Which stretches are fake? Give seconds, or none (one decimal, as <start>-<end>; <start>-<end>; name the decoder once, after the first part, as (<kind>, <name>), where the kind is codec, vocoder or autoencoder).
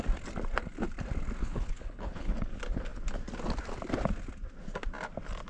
1.4-2.3 (codec, HILCodec)